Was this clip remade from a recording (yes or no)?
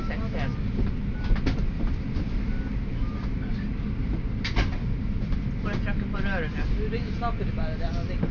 no